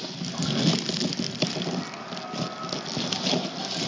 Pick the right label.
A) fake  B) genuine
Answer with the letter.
B